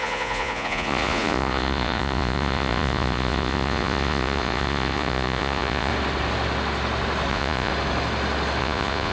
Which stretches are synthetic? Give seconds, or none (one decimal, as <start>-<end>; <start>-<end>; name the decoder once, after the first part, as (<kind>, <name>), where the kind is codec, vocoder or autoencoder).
0.0-5.9 (vocoder, Vocos); 7.3-7.7; 8.6-9.1